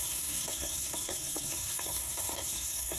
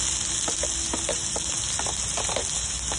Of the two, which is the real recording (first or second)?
second